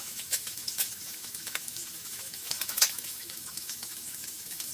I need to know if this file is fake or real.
fake